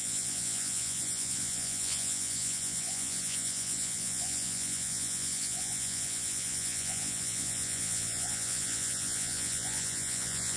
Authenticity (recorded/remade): remade